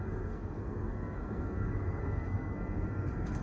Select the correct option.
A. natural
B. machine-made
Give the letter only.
B